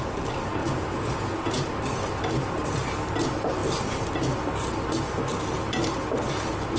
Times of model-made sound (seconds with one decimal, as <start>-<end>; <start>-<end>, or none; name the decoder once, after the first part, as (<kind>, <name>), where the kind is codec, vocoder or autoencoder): 0.6-1.7 (vocoder, Vocos)